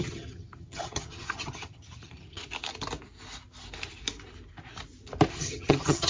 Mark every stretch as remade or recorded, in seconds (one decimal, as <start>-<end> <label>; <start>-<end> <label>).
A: 0.0-2.4 remade; 2.4-5.3 recorded; 5.3-6.1 remade